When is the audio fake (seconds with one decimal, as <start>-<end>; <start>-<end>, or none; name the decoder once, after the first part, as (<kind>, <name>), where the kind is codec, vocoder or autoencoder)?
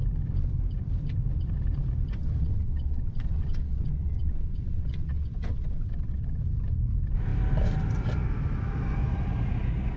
2.2-6.4 (vocoder, WaveNeXt)